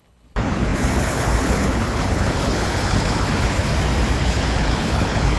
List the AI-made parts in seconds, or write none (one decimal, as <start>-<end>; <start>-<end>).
0.0-3.7; 4.2-5.4